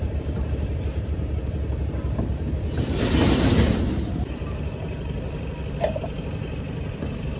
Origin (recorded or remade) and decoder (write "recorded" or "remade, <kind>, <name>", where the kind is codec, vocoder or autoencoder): remade, vocoder, BigVGAN v2